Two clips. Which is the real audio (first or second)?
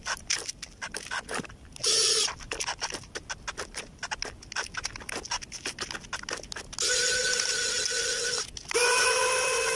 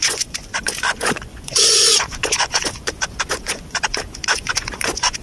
first